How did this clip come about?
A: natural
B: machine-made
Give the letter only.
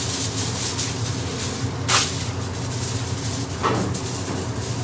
A